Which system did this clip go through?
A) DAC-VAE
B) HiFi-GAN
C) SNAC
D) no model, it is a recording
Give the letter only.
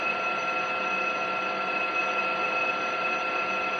D